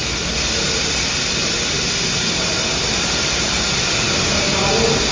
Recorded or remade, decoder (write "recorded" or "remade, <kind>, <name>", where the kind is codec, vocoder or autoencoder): recorded